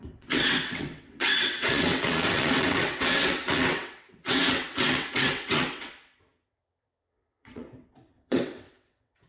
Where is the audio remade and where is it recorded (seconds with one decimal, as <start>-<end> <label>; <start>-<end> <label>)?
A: 0.0-9.3 remade